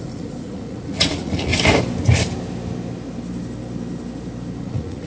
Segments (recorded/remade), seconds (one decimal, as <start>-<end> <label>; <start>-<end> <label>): 0.0-1.5 remade; 1.5-4.6 recorded; 4.6-5.1 remade